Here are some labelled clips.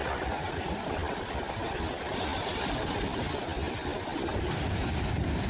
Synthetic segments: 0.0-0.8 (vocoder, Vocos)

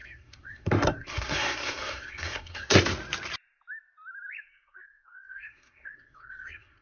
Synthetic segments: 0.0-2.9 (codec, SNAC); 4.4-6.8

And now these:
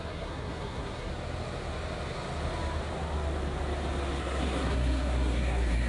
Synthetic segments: 0.0-1.1 (codec, SNAC); 4.2-5.9

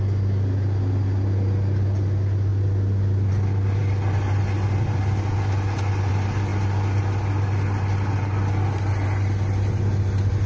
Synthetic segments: none